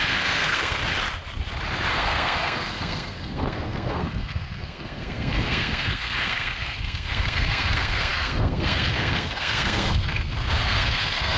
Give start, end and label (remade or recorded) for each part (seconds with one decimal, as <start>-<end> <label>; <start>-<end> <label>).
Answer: 0.0-0.8 remade; 0.8-1.9 recorded; 1.9-11.4 remade